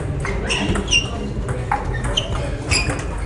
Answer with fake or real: real